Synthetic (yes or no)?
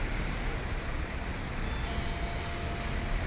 no